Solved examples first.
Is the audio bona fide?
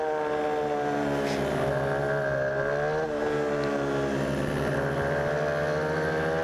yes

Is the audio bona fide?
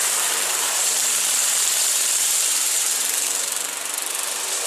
no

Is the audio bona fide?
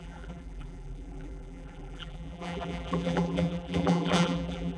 no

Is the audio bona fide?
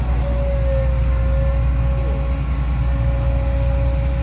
yes